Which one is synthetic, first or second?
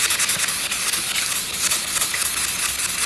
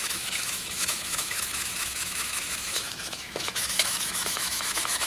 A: second